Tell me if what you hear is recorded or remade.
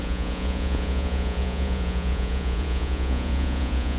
remade